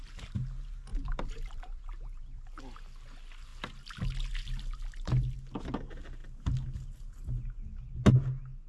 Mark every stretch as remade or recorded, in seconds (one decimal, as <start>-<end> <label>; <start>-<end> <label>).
0.0-0.9 recorded; 0.9-2.2 remade; 2.2-8.7 recorded